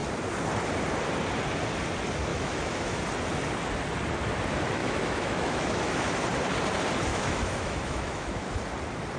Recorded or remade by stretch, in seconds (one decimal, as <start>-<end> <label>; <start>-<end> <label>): 0.0-2.3 recorded; 2.3-3.0 remade; 3.0-4.8 recorded; 4.8-6.2 remade; 6.2-7.1 recorded; 7.1-8.6 remade; 8.6-9.2 recorded